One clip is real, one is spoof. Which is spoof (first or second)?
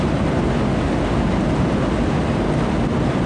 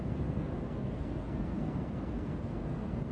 second